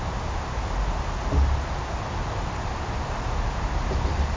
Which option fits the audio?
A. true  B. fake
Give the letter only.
A